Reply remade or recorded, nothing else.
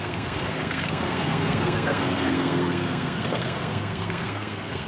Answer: remade